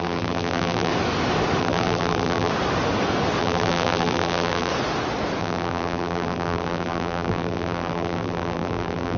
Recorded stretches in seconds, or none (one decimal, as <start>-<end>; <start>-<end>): 0.9-1.6; 2.5-3.4; 4.7-5.4